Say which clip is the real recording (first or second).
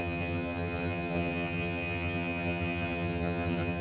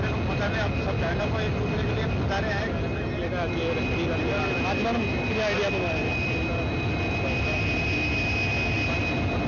second